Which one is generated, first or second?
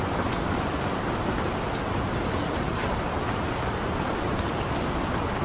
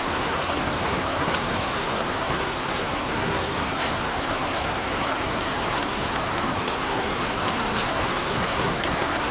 second